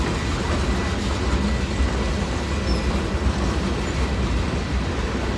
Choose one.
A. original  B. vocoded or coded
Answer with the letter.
A